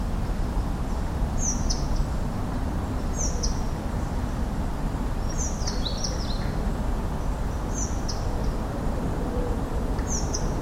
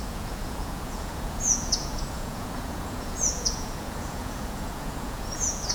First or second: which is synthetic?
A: second